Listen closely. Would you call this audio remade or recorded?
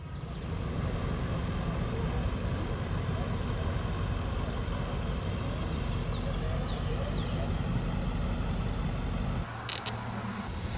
recorded